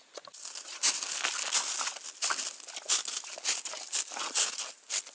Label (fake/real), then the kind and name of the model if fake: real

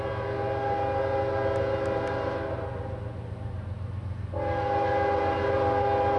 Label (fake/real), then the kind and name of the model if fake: real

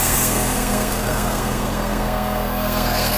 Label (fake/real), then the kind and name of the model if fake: fake, codec, SNAC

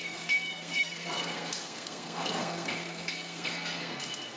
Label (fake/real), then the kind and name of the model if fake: fake, codec, SNAC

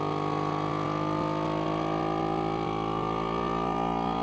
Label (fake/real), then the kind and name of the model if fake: real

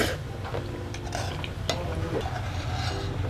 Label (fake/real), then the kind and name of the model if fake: real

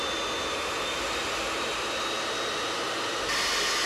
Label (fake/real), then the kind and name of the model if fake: real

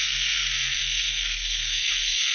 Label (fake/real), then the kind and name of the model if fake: fake, codec, SNAC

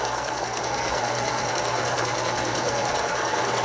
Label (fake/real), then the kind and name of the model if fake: fake, codec, SNAC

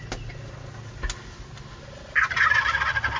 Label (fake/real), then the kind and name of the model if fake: real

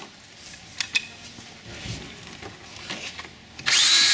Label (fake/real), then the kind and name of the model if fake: real